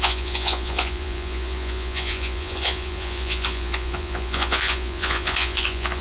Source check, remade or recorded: remade